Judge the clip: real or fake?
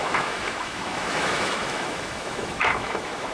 fake